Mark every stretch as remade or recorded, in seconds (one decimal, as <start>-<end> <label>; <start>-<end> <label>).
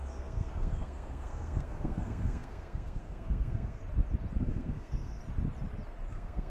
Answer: 0.0-3.8 remade; 3.8-4.4 recorded; 4.4-5.2 remade; 5.2-6.1 recorded; 6.1-6.5 remade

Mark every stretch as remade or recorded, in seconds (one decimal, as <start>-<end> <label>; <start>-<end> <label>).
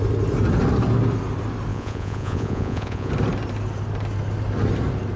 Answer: 0.0-1.7 recorded; 1.7-3.1 remade; 3.1-5.2 recorded